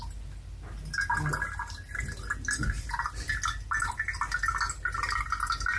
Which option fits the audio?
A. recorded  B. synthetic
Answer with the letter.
A